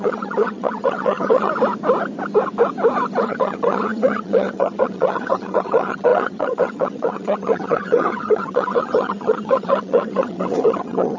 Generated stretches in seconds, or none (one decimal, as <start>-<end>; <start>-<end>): 0.0-1.5; 3.2-11.2